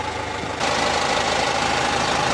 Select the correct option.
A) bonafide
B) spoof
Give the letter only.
A